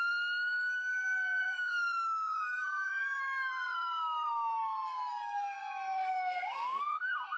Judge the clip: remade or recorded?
remade